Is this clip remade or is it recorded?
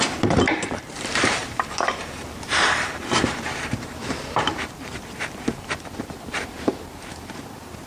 remade